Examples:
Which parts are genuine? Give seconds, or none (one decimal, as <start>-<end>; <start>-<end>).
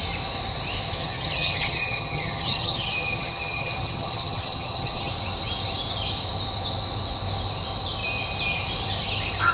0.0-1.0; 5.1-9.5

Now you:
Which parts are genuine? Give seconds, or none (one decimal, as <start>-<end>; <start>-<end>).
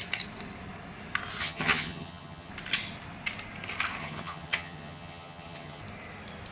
0.0-1.4; 2.5-4.0; 5.8-6.5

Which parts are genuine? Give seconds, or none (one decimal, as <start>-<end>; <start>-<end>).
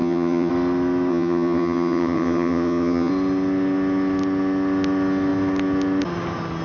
0.5-1.1; 3.1-6.6